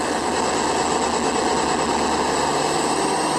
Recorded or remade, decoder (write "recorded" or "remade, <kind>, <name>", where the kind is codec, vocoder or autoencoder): recorded